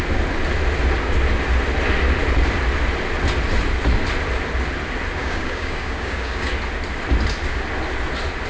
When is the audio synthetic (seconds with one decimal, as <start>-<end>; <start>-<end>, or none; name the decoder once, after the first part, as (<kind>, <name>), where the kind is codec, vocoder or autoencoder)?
5.2-6.5 (codec, DAC)